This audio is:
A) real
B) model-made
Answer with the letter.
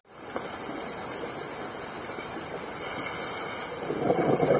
A